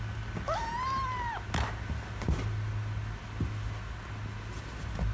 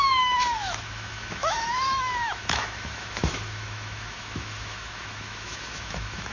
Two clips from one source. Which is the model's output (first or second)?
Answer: second